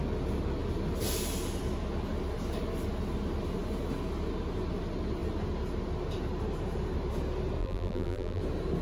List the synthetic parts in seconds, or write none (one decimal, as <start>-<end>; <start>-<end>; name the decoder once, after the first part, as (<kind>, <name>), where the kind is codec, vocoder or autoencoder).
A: 7.6-8.4 (vocoder, BigVGAN v2)